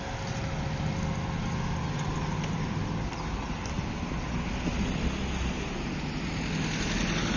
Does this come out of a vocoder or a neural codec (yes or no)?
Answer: no